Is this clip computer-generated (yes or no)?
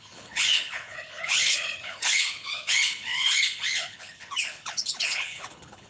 yes